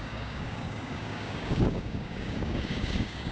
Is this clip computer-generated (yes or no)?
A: yes